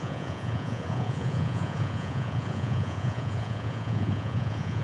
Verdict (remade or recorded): remade